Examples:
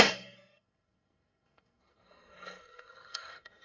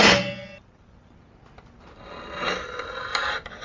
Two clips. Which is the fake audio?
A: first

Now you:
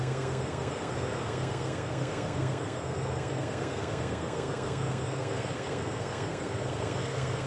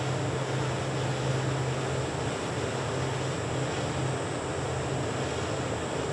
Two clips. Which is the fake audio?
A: first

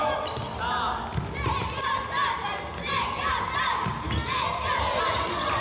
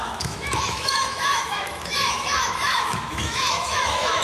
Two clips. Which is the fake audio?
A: second